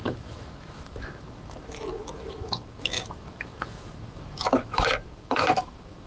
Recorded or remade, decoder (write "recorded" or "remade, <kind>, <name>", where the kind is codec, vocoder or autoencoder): remade, autoencoder, DAC-VAE